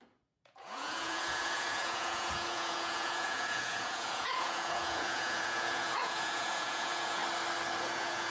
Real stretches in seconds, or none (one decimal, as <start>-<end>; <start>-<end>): 7.2-7.8